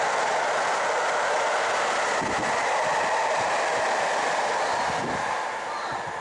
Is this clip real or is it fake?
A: real